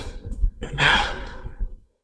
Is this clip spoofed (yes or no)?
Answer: yes